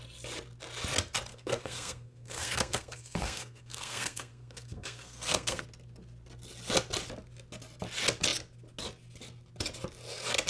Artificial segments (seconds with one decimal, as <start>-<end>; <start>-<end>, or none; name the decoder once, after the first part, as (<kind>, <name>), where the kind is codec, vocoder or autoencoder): 1.3-5.6 (codec, SNAC)